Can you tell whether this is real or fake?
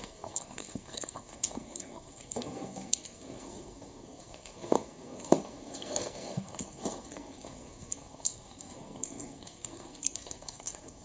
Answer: fake